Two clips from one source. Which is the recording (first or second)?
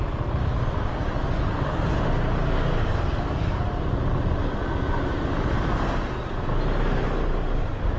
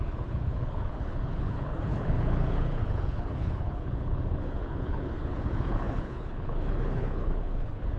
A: first